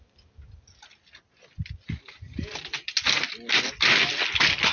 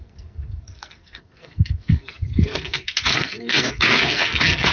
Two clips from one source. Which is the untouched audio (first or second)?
first